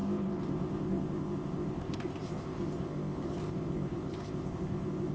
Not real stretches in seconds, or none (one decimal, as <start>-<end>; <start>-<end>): 0.0-5.1